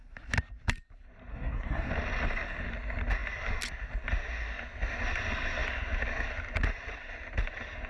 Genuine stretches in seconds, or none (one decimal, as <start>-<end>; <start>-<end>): 0.0-1.3; 1.9-7.9